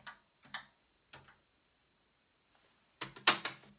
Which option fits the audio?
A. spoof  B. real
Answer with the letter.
B